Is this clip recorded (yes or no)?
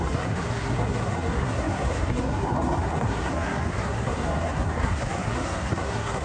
no